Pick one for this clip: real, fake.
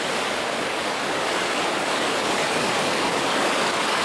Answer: fake